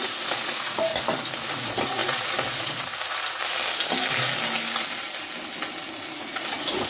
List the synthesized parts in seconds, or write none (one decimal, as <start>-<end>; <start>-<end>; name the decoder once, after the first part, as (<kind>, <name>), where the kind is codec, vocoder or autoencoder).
0.0-0.9 (vocoder, Vocos); 1.5-3.4; 6.1-6.9